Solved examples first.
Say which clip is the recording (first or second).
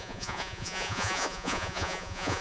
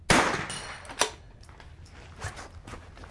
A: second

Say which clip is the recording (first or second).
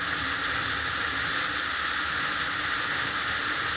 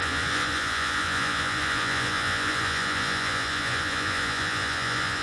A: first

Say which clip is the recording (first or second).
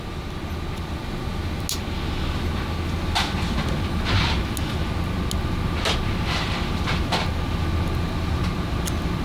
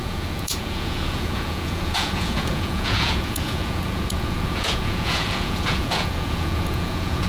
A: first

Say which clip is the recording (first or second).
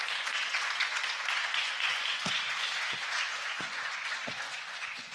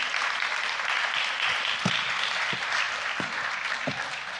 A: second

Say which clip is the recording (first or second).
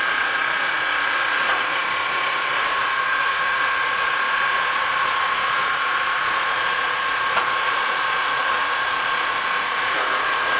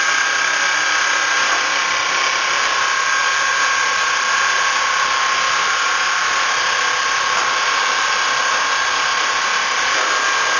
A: second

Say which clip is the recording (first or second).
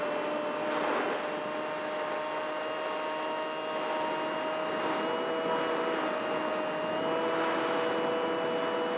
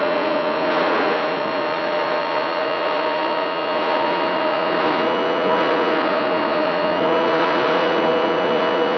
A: first